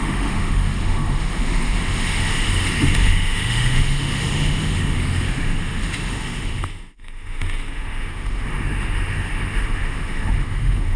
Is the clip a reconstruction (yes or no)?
yes